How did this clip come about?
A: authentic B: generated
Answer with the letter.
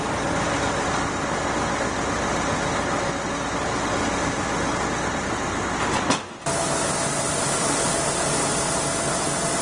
A